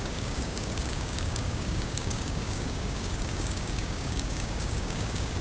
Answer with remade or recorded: remade